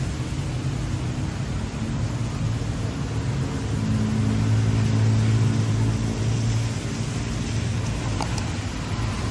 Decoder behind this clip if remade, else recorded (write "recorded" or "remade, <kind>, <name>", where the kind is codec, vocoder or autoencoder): recorded